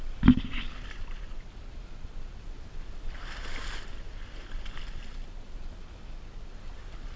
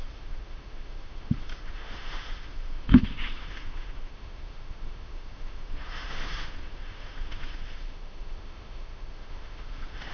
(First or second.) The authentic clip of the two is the first